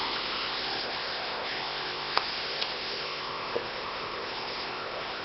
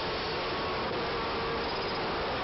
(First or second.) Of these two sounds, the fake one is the first